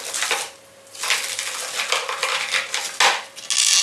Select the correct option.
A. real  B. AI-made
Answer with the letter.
A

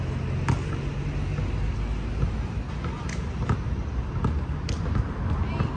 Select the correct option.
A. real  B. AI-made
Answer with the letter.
A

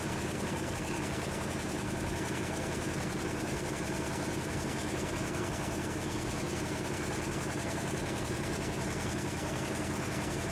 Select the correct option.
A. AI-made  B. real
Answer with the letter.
A